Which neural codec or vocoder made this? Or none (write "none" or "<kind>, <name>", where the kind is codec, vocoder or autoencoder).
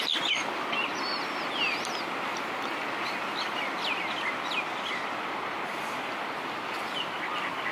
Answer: none